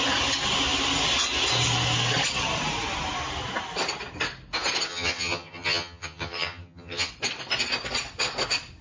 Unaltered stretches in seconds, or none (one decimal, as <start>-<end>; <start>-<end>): 0.0-4.9; 7.1-8.8